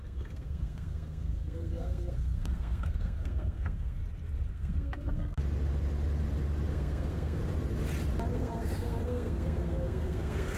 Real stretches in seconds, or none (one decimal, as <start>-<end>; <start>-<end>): 4.0-4.5; 5.4-6.7; 7.4-8.3